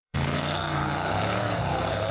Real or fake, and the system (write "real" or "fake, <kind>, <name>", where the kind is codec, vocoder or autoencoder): fake, codec, SNAC